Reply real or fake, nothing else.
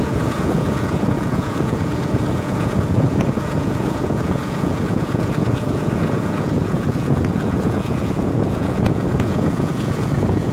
fake